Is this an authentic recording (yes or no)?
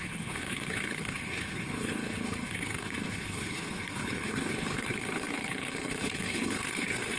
no